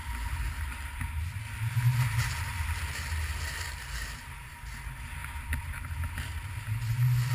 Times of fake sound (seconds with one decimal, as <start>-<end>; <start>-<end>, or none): none